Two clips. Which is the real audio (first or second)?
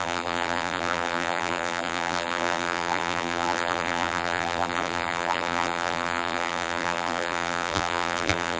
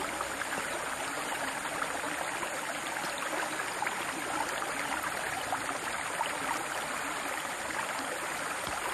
second